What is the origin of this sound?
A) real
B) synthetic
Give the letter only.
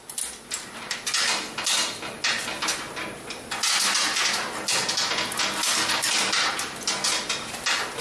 A